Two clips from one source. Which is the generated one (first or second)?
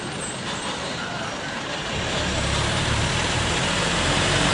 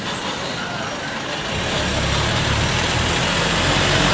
first